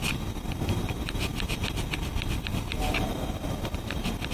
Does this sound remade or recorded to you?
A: recorded